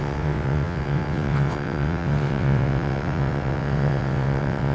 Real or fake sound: fake